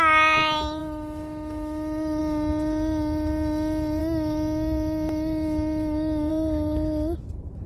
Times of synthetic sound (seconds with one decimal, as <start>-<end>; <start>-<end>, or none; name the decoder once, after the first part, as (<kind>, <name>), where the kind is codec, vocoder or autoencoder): 0.8-2.2 (autoencoder, DAC-VAE); 4.0-6.3